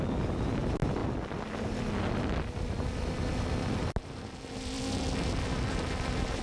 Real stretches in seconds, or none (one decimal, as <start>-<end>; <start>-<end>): 0.0-6.4